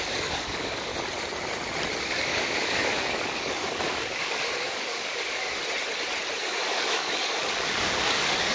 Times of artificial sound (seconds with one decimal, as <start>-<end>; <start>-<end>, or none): 0.0-0.9; 2.0-5.6; 6.4-8.5